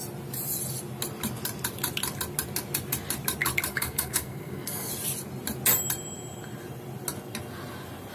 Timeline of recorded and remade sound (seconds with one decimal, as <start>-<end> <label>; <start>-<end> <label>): 0.0-3.7 recorded; 3.7-4.9 remade; 4.9-8.1 recorded

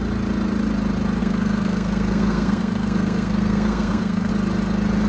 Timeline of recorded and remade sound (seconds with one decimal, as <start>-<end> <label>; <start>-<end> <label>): 0.0-1.2 recorded; 1.2-4.3 remade; 4.3-5.1 recorded

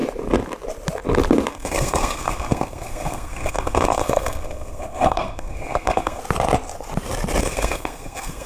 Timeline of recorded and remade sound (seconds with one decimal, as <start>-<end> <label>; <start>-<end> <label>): 0.0-1.5 recorded; 1.5-6.2 remade; 6.2-7.4 recorded; 7.4-8.5 remade

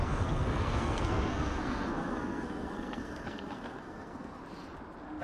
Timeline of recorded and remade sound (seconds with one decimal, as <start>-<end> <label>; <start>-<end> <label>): 0.0-4.4 remade; 4.4-5.2 recorded

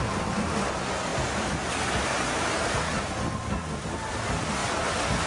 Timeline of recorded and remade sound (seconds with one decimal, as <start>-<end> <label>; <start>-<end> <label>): 0.0-5.3 recorded

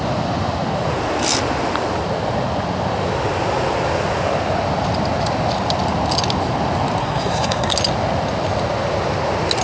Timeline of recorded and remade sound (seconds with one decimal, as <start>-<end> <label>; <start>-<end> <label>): 0.0-7.0 recorded; 7.0-7.7 remade; 7.7-9.6 recorded

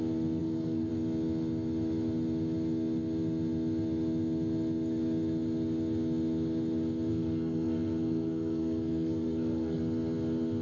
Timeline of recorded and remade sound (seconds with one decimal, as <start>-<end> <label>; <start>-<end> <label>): 0.0-0.4 recorded; 0.4-0.9 remade; 0.9-7.1 recorded; 7.1-9.8 remade; 9.8-10.6 recorded

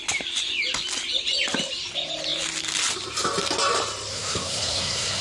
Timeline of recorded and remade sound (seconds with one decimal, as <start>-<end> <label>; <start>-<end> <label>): 0.0-4.1 recorded; 4.1-5.2 remade